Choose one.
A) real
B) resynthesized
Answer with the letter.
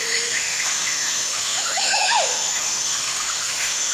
B